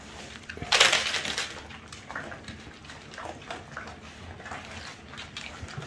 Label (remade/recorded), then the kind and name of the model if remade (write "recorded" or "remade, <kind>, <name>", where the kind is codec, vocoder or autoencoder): recorded